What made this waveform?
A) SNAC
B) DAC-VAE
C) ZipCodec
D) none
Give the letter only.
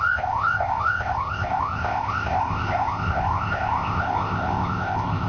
C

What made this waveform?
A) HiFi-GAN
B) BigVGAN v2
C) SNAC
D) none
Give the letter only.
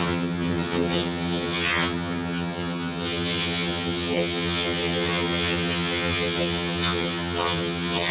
A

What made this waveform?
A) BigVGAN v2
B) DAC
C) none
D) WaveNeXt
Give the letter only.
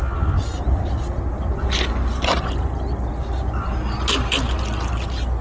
C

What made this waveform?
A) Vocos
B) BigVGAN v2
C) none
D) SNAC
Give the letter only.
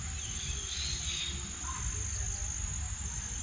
C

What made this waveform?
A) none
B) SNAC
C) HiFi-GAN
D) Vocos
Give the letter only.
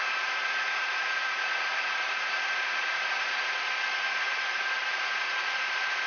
D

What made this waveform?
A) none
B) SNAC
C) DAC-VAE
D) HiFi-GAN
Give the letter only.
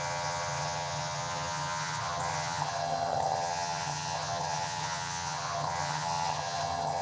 D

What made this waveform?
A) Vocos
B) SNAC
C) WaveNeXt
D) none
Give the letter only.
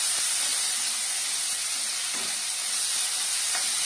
D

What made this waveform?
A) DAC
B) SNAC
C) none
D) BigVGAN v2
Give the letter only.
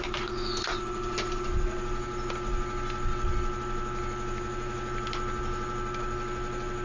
C